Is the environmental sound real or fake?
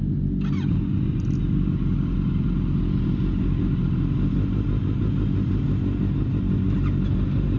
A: real